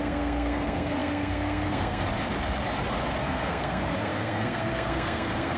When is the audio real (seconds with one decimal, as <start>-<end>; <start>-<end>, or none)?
2.1-3.2